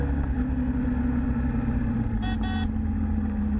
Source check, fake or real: real